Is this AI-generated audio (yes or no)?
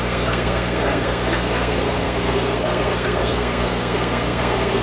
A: yes